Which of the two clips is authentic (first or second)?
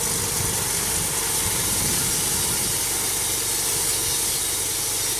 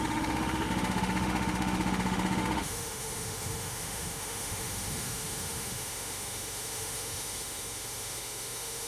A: first